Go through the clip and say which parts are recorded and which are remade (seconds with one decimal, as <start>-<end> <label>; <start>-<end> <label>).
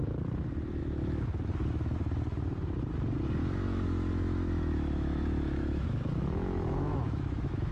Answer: 0.0-0.8 recorded; 0.8-1.3 remade; 1.3-3.4 recorded; 3.4-7.7 remade